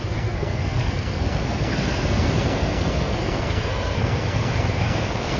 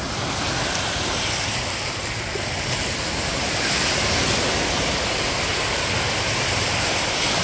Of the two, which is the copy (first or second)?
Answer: first